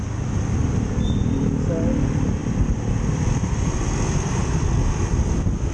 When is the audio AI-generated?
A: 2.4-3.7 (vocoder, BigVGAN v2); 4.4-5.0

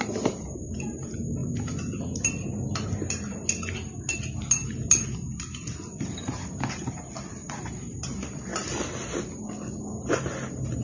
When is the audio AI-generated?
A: 0.0-1.4 (vocoder, BigVGAN v2); 5.9-8.5; 9.8-10.8

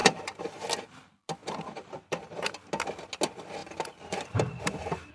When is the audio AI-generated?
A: 0.0-0.6 (vocoder, BigVGAN v2); 1.4-2.7; 3.6-5.1

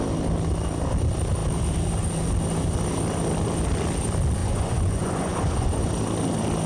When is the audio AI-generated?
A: 4.4-5.9 (vocoder, Vocos)